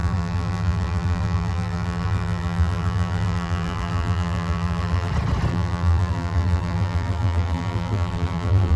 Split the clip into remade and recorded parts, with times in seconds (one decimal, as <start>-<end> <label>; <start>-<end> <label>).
0.0-5.1 remade; 5.1-5.5 recorded; 5.5-8.8 remade